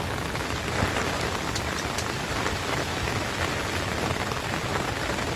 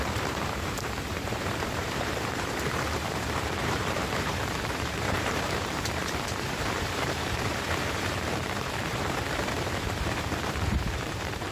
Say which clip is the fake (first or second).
second